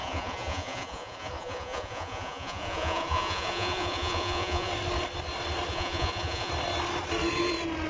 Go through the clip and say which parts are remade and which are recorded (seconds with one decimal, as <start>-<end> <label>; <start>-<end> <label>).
0.0-4.7 remade; 4.7-5.7 recorded; 5.7-6.5 remade; 6.5-7.9 recorded